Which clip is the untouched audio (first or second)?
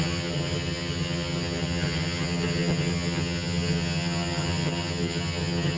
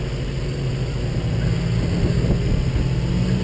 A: second